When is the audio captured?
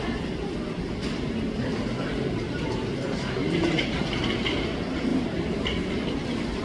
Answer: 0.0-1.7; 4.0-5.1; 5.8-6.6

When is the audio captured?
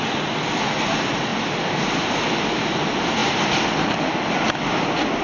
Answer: 0.0-3.2; 4.7-5.2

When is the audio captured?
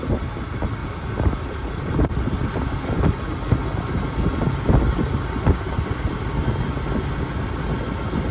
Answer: 0.0-0.8; 2.1-8.3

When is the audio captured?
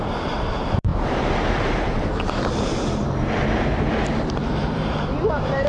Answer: none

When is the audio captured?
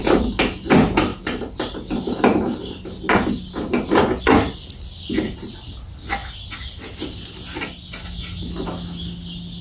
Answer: 0.0-9.6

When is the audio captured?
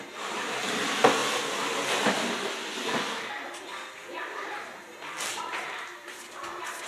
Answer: 1.2-5.3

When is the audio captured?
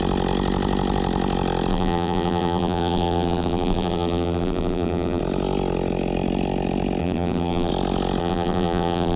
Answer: 0.0-1.7; 5.2-7.0; 7.7-8.2